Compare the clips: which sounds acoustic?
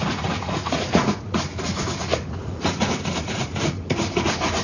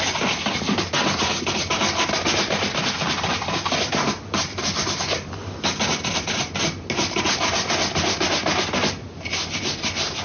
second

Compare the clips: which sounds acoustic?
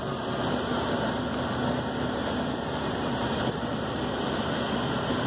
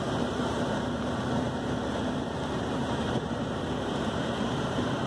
first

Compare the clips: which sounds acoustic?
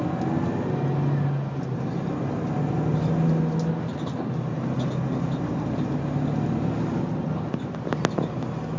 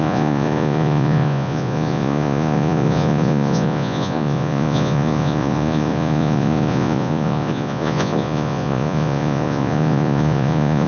first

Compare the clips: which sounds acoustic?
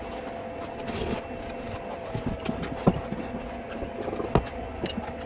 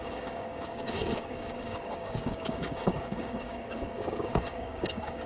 first